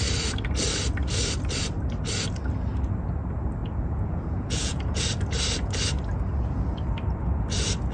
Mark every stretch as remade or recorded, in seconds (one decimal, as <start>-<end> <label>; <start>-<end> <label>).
0.0-3.6 recorded; 3.6-5.0 remade; 5.0-7.9 recorded